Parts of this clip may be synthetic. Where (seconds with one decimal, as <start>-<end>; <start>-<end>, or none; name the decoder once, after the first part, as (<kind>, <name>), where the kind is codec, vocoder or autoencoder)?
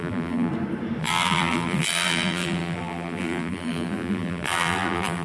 0.0-0.5 (vocoder, BigVGAN v2); 1.0-5.2